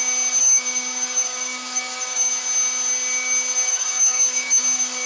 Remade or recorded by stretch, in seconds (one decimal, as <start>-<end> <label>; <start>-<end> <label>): 0.0-0.4 recorded; 0.4-2.3 remade; 2.3-3.7 recorded; 3.7-4.6 remade; 4.6-5.1 recorded